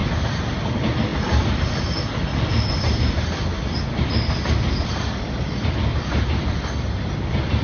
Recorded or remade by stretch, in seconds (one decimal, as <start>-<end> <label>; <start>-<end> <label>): 0.0-1.1 recorded; 1.1-5.7 remade; 5.7-7.6 recorded